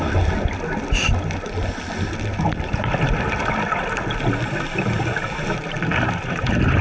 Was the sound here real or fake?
real